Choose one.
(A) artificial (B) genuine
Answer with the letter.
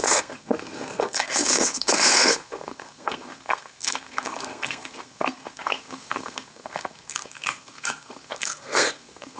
A